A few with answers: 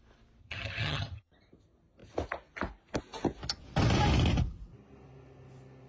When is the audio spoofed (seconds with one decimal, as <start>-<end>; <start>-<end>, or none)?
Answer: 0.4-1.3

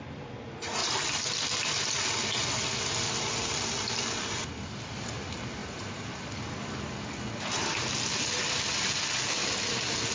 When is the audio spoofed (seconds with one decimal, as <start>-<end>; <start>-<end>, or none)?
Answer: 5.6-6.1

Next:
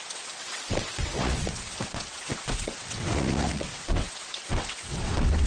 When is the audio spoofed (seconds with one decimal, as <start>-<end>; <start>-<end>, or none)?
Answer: 0.0-5.5

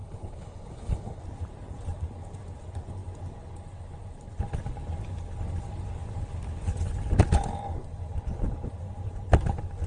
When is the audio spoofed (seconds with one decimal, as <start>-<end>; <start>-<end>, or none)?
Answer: 0.0-1.2

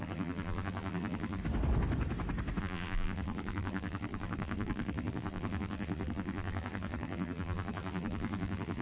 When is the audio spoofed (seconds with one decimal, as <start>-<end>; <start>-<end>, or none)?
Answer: 0.0-1.4; 2.6-8.8

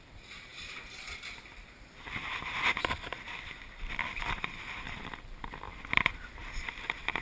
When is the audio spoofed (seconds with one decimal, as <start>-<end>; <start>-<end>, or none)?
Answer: 0.0-6.4